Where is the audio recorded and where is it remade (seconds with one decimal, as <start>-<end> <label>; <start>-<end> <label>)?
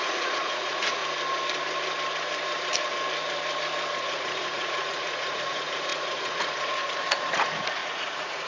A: 0.0-1.0 remade; 1.0-4.0 recorded; 4.0-8.5 remade